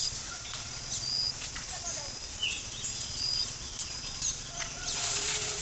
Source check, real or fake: fake